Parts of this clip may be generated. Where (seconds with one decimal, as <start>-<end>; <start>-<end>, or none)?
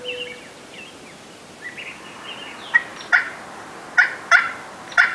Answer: none